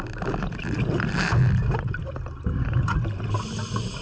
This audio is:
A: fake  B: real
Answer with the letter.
B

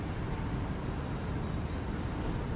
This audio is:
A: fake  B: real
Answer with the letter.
B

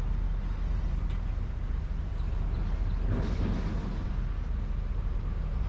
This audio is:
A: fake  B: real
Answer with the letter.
B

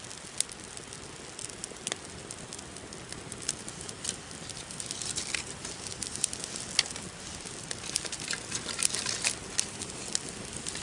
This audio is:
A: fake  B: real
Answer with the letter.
B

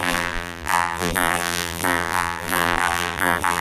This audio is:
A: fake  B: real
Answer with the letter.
A